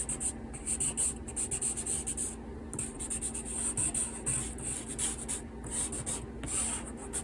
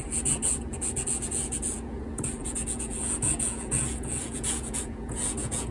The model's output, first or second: second